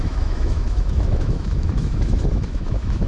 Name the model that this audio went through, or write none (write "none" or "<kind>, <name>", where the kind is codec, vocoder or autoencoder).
autoencoder, DAC-VAE